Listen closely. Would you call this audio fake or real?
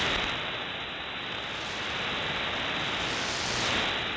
real